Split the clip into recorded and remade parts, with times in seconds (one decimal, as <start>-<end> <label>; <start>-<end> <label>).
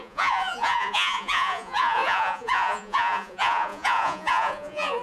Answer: 0.0-5.0 remade